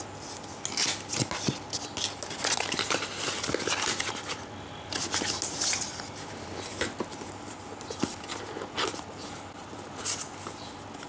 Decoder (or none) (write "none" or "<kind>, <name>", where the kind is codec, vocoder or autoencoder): none